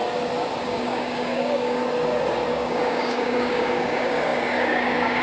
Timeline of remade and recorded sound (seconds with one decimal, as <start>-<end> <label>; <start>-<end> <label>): 0.0-0.6 recorded; 0.6-1.8 remade; 1.8-2.5 recorded; 2.5-5.2 remade